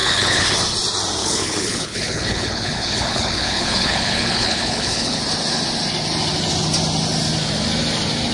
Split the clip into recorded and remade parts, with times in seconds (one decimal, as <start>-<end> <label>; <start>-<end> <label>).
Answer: 0.0-0.5 remade; 0.5-1.2 recorded; 1.2-5.2 remade; 5.2-8.3 recorded